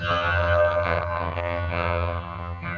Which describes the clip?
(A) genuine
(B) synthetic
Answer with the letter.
B